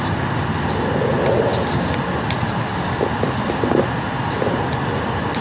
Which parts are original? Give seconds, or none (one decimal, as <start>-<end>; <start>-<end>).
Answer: 0.0-5.4